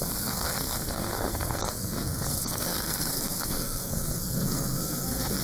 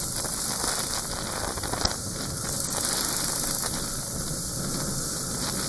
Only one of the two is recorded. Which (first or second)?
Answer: second